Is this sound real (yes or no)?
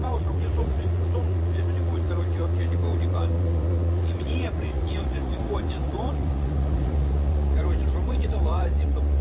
no